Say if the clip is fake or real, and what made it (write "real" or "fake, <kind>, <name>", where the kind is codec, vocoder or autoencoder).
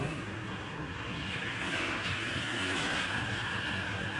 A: fake, codec, SNAC